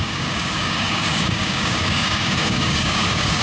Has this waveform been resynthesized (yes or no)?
yes